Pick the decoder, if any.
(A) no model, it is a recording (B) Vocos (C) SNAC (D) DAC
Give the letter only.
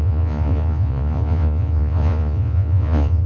B